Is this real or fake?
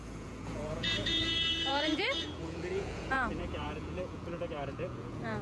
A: fake